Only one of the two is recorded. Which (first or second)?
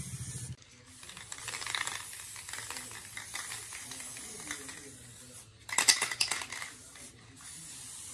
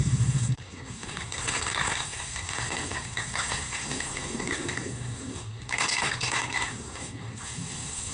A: first